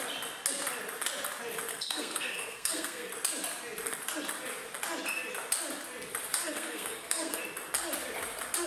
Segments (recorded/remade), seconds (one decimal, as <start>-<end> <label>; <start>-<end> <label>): 0.0-1.7 recorded; 1.7-3.1 remade; 3.1-6.4 recorded; 6.4-7.4 remade; 7.4-8.7 recorded